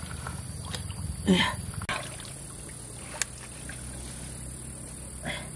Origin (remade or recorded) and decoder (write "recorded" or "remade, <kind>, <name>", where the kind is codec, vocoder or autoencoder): recorded